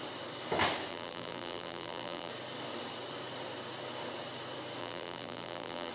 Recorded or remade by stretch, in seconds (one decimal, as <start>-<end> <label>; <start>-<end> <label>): 0.0-0.9 recorded; 0.9-2.3 remade; 2.3-4.8 recorded; 4.8-5.9 remade